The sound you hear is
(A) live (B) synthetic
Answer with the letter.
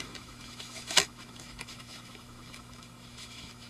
B